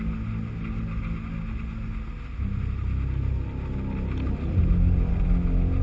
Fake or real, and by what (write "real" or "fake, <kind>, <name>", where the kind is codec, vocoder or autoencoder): real